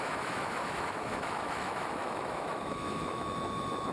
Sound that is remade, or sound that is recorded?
remade